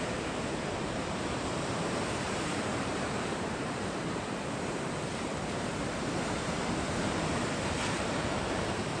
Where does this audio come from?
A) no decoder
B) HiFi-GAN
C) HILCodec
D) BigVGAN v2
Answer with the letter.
D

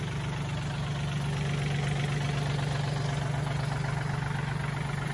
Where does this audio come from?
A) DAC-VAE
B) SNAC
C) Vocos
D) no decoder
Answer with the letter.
D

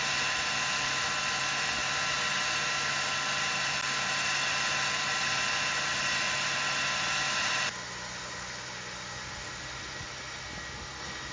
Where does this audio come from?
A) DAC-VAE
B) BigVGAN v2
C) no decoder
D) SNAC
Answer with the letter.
C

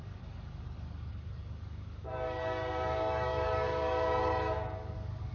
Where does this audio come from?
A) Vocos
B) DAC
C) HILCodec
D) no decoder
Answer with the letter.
B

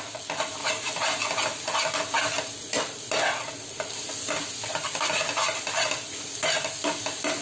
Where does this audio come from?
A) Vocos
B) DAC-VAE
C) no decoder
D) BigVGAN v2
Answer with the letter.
C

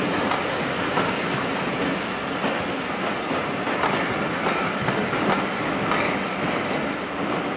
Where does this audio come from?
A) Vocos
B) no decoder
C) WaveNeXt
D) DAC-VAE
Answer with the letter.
B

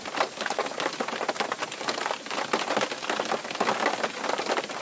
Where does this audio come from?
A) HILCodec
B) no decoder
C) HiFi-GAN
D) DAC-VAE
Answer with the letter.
B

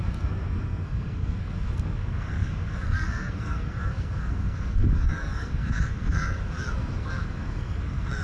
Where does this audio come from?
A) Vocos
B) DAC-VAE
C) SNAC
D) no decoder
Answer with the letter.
C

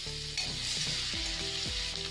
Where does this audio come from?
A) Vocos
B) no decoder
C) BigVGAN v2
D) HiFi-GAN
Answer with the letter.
B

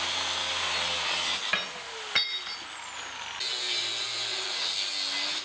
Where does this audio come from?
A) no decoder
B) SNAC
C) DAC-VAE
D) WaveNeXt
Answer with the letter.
A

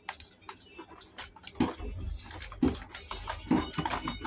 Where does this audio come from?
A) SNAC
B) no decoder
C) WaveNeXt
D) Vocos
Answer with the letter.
B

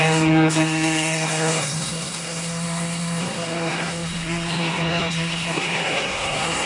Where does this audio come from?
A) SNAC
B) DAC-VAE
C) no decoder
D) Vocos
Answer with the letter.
A